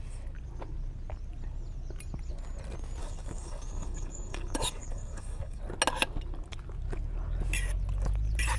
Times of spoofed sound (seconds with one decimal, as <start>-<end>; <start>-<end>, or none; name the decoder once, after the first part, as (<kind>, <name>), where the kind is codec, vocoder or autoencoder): 3.0-5.6 (codec, DAC)